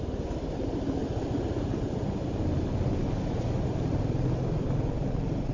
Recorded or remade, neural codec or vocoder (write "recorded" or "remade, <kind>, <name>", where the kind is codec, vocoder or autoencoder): recorded